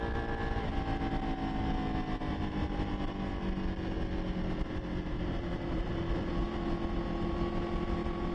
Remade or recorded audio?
recorded